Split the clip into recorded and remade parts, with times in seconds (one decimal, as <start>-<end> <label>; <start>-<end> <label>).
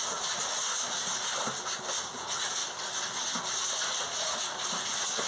0.0-1.1 remade; 1.1-2.0 recorded; 2.0-2.6 remade; 2.6-3.5 recorded; 3.5-5.3 remade